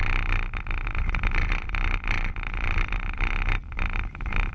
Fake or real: fake